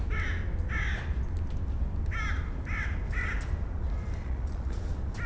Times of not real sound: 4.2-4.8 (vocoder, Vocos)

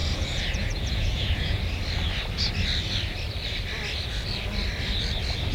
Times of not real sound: 0.0-1.6 (vocoder, Vocos)

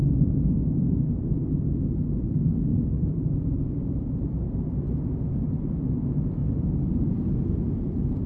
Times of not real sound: 2.7-4.7 (vocoder, BigVGAN v2)

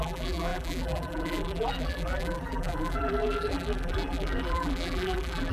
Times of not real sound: 0.0-5.5 (vocoder, BigVGAN v2)

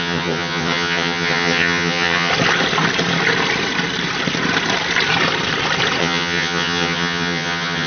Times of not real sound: 0.0-2.3 (vocoder, HiFi-GAN); 6.0-7.9

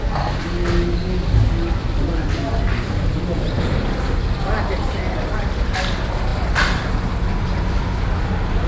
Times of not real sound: none